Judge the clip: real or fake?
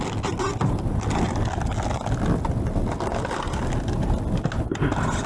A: real